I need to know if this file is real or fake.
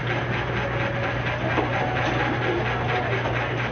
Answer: real